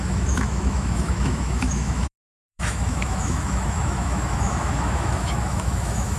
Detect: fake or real fake